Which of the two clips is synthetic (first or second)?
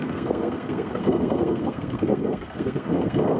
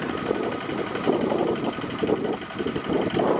first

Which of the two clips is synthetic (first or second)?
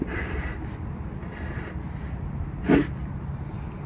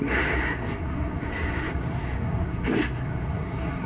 second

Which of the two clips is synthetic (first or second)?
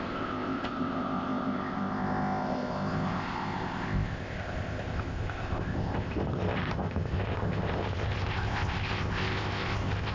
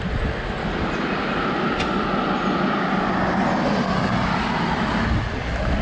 first